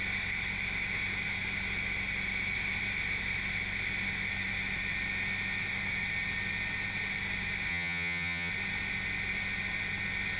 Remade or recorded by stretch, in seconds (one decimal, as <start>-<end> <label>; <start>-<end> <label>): 0.0-7.7 recorded; 7.7-8.5 remade; 8.5-10.4 recorded